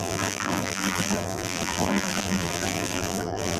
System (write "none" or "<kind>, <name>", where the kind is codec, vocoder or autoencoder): vocoder, BigVGAN v2